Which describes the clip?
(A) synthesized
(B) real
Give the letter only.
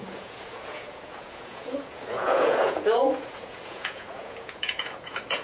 A